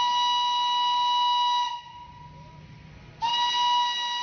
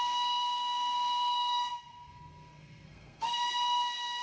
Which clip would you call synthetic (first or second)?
second